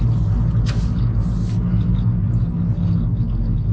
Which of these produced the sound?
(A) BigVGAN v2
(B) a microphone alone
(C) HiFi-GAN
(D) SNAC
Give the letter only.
B